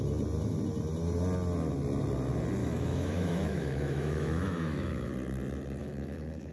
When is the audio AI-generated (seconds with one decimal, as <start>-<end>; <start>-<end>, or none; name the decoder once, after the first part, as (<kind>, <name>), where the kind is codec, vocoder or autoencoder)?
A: 2.6-5.1 (autoencoder, DAC-VAE); 5.8-6.5